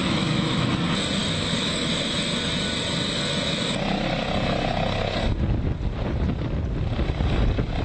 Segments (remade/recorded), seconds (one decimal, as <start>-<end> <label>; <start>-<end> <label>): 0.0-0.7 remade; 0.7-1.2 recorded; 1.2-1.9 remade; 1.9-7.8 recorded